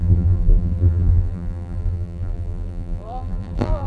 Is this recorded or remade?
remade